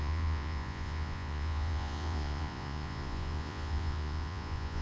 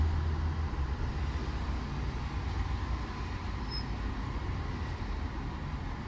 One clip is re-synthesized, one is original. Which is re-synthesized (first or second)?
first